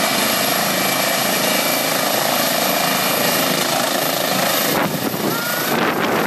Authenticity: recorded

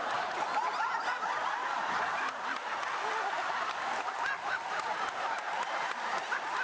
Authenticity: recorded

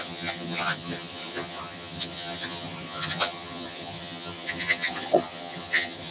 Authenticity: remade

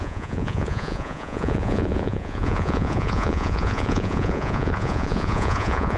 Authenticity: remade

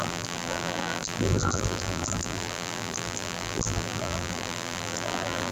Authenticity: remade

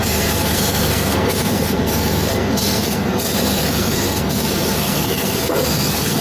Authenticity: remade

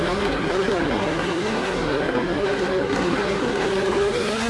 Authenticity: remade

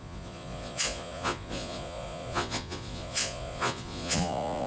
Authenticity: remade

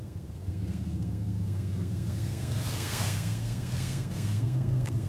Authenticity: remade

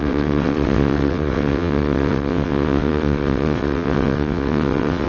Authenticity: remade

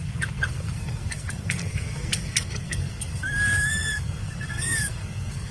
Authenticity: remade